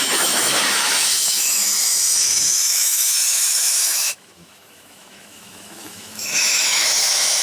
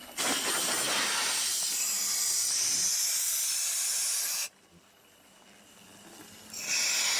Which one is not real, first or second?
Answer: first